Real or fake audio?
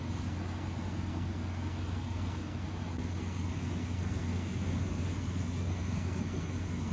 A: fake